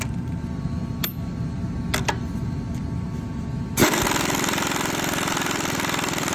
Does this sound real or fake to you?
real